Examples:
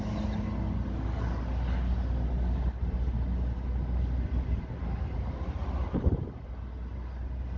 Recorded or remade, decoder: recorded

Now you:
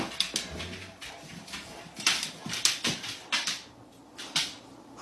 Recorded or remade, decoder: recorded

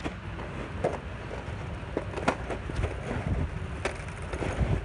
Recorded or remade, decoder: recorded